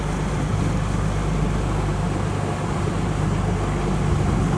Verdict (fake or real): real